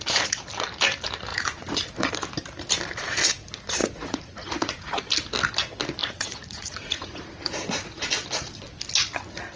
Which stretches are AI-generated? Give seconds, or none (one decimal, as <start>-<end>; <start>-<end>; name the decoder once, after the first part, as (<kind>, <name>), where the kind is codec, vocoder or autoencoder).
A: 1.3-2.1 (vocoder, Vocos); 3.8-5.0; 6.0-8.1